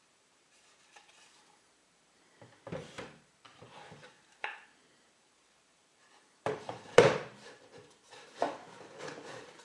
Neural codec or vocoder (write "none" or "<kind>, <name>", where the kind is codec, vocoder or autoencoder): vocoder, BigVGAN v2